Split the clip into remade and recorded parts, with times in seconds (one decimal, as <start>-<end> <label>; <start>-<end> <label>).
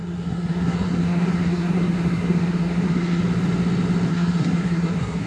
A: 0.0-3.2 remade; 3.2-4.1 recorded; 4.1-5.3 remade